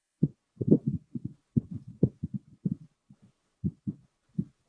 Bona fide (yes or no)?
no